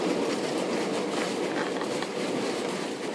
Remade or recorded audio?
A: recorded